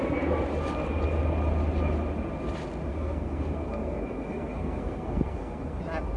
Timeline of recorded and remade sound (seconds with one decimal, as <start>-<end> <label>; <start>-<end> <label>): 0.0-2.9 recorded; 2.9-5.8 remade; 5.8-6.2 recorded